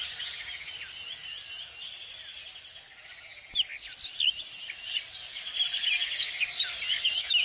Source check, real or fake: real